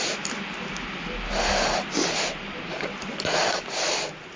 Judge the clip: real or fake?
real